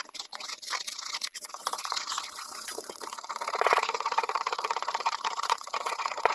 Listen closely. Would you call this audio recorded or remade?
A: remade